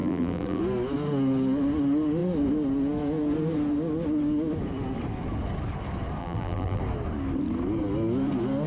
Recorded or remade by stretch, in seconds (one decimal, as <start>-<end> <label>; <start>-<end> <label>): 0.0-0.6 remade; 0.6-6.2 recorded; 6.2-6.8 remade; 6.8-8.7 recorded